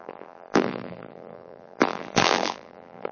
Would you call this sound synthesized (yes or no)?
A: yes